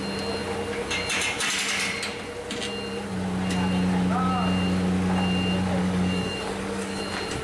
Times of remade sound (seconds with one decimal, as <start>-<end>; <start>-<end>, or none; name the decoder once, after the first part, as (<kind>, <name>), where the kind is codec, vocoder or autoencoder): 5.8-7.0 (codec, DAC)